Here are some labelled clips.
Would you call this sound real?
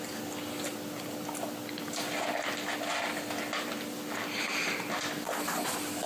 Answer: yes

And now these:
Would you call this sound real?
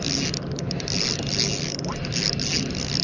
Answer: yes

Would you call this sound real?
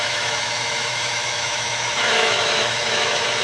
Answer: no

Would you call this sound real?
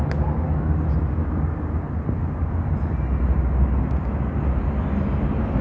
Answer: yes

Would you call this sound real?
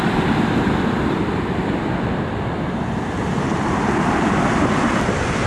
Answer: yes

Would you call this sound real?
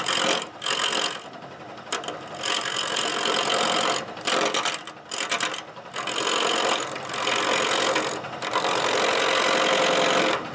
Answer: yes